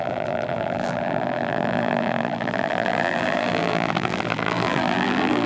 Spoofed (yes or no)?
yes